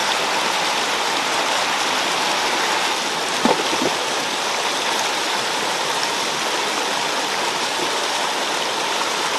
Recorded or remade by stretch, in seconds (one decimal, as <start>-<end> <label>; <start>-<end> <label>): 0.0-9.4 recorded